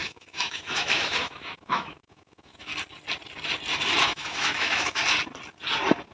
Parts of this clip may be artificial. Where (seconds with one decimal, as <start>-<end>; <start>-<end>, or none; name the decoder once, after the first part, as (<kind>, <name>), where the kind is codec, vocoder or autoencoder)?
0.0-2.7 (autoencoder, DAC-VAE); 4.0-5.0